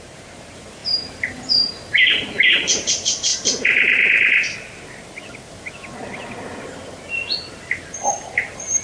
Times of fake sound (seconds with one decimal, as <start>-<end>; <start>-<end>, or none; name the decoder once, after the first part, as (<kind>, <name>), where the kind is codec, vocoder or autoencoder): 0.0-3.3 (vocoder, BigVGAN v2); 7.5-8.8